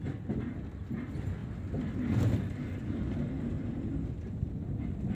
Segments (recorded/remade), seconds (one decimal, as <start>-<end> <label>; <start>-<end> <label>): 0.0-5.1 recorded